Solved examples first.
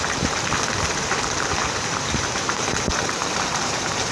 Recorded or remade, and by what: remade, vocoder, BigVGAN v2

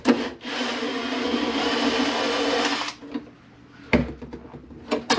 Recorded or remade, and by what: recorded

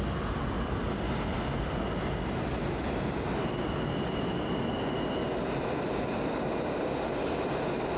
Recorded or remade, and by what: recorded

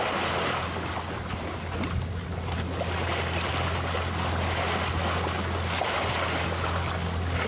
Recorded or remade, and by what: recorded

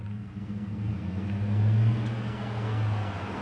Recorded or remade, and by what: remade, codec, SNAC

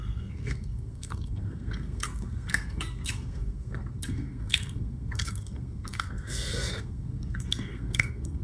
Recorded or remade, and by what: remade, codec, SNAC